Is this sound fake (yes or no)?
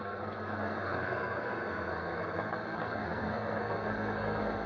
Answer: yes